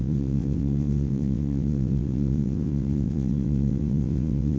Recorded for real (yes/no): no